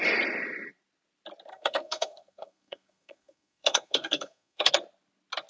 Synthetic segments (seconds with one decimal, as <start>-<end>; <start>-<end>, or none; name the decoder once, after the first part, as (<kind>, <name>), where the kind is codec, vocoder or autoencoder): 1.5-4.7 (codec, SNAC)